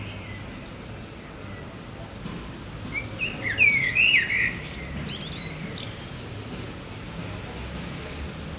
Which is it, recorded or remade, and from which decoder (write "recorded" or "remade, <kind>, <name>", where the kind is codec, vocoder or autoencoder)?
recorded